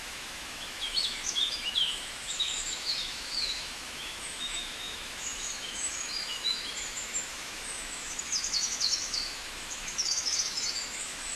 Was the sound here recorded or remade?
remade